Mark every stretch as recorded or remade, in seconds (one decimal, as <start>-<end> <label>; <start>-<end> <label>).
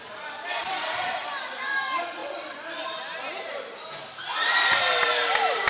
0.0-5.7 remade